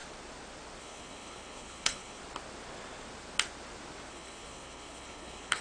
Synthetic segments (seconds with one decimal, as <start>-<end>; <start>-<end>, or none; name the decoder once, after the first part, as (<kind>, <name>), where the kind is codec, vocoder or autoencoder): 0.8-2.2 (codec, HILCodec); 4.1-5.6